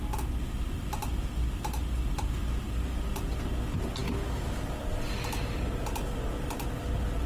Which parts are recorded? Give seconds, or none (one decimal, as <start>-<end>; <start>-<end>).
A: 0.0-7.3